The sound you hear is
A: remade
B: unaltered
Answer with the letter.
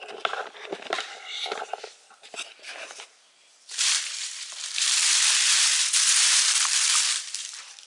A